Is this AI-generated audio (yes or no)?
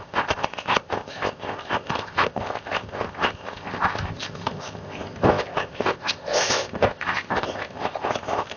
yes